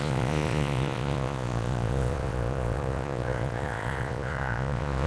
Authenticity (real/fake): fake